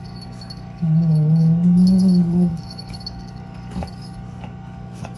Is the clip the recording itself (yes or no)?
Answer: no